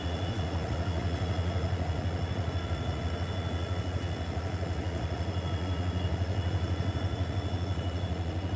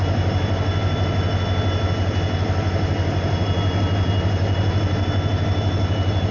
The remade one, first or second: first